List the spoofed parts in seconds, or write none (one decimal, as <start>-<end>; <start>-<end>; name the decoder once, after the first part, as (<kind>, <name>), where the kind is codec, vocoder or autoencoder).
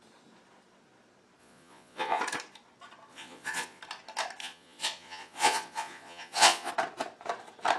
1.4-2.2 (vocoder, Vocos); 3.1-3.8; 4.4-6.7